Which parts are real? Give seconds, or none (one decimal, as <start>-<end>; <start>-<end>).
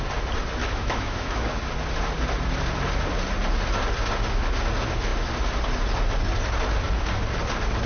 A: 0.0-0.6; 1.5-7.9